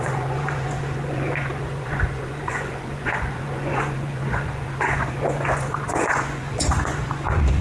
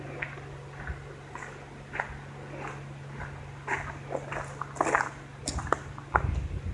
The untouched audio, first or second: second